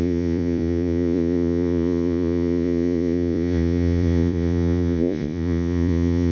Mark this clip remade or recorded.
remade